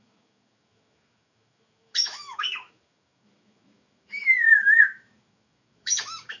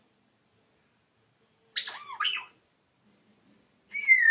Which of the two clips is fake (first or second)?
first